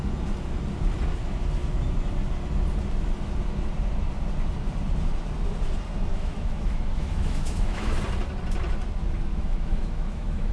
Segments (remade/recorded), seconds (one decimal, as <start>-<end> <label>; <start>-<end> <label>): 0.0-6.1 recorded; 6.1-8.0 remade; 8.0-9.3 recorded; 9.3-10.5 remade